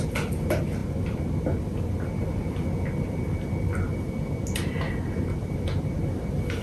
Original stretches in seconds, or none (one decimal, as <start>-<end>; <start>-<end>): 0.0-6.6